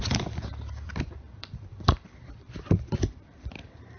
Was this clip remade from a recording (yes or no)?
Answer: yes